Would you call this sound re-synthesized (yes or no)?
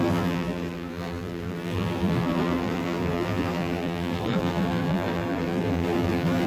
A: yes